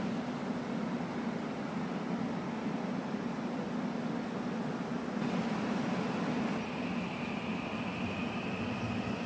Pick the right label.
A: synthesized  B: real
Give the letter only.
B